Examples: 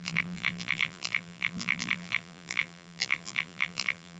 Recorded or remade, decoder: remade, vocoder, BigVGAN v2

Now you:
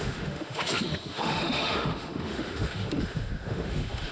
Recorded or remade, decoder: remade, autoencoder, DAC-VAE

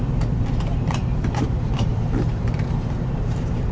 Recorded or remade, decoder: remade, vocoder, BigVGAN v2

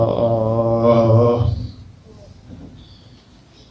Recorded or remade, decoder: recorded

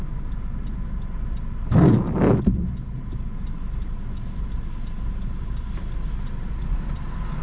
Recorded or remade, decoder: recorded